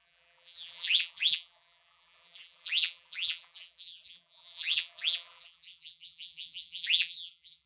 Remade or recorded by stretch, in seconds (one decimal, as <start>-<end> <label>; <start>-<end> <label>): 0.0-7.7 remade